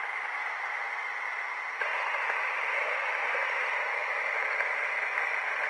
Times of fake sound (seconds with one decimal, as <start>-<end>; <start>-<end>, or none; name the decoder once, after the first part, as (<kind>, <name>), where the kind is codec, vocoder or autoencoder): none